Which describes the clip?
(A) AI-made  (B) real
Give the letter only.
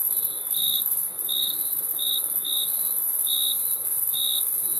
A